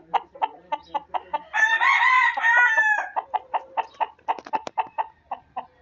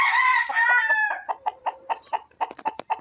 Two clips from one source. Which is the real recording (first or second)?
first